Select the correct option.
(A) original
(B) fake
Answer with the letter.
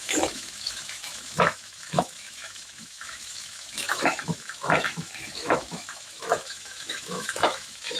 B